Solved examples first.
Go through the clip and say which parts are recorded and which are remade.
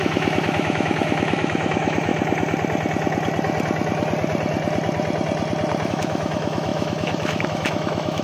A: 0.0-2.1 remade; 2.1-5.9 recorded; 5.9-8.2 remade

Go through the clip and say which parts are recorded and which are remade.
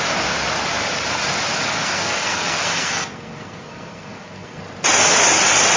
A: 0.0-1.8 recorded; 1.8-4.6 remade; 4.6-5.8 recorded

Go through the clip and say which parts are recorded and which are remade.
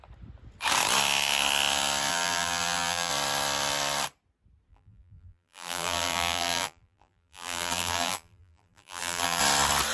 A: 0.0-2.1 recorded; 2.1-3.1 remade; 3.1-4.7 recorded; 4.7-9.4 remade; 9.4-9.9 recorded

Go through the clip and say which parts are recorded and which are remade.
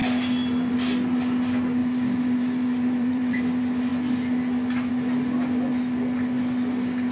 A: 0.0-1.8 recorded; 1.8-3.4 remade; 3.4-7.1 recorded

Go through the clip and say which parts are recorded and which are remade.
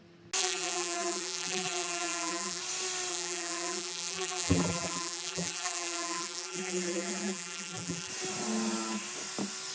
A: 0.0-0.4 recorded; 0.4-2.6 remade; 2.6-3.1 recorded; 3.1-8.1 remade; 8.1-9.7 recorded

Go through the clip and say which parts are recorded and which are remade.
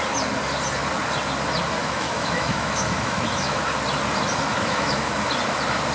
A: 0.0-1.8 recorded; 1.8-3.6 remade; 3.6-4.5 recorded; 4.5-5.1 remade; 5.1-5.9 recorded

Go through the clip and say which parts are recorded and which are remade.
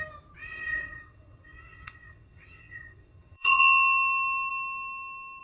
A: 0.0-0.4 recorded; 0.4-3.6 remade; 3.6-5.4 recorded